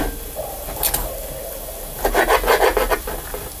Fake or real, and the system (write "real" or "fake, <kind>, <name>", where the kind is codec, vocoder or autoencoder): real